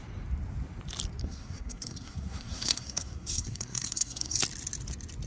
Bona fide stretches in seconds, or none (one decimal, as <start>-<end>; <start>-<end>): 0.0-1.2; 4.4-5.3